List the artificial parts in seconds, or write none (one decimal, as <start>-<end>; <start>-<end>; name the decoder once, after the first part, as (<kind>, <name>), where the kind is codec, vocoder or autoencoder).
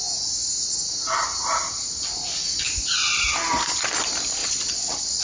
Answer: 4.4-5.2 (vocoder, WaveNeXt)